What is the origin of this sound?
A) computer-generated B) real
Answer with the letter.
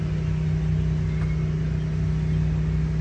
B